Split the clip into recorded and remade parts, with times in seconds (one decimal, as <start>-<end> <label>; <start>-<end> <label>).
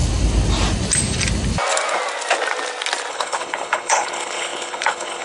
0.0-3.1 recorded; 3.1-5.2 remade